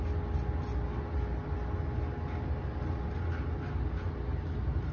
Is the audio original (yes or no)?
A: yes